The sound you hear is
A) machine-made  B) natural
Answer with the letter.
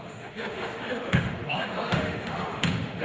A